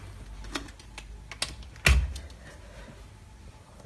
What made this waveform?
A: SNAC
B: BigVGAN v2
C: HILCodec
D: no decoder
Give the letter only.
D